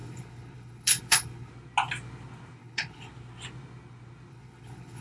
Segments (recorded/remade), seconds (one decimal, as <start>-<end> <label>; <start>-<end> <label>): 0.0-1.5 remade; 1.5-2.6 recorded; 2.6-3.1 remade; 3.1-4.3 recorded; 4.3-5.0 remade